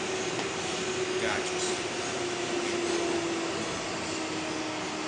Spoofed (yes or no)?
no